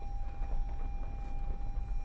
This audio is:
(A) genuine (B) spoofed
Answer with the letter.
A